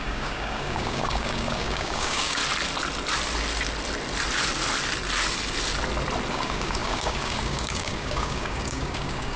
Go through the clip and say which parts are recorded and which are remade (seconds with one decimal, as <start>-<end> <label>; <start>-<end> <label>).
0.0-2.4 remade; 2.4-6.3 recorded; 6.3-9.4 remade